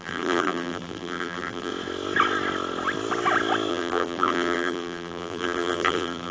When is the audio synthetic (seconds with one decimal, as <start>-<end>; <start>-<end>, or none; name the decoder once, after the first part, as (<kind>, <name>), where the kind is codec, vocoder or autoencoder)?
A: 0.0-1.7 (vocoder, BigVGAN v2); 3.7-6.3